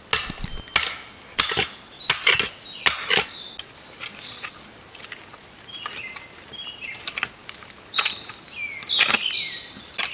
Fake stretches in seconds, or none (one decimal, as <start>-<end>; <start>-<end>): none